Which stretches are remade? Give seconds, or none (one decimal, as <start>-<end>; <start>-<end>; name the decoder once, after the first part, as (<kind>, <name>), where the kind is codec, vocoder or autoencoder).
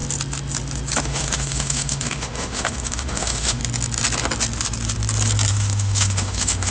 1.0-3.6 (autoencoder, DAC-VAE); 5.5-6.7